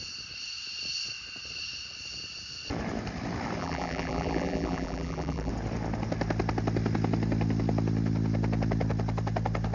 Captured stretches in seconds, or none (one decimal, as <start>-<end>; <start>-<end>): 0.0-3.6; 5.5-9.7